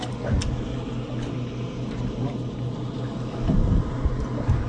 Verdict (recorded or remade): recorded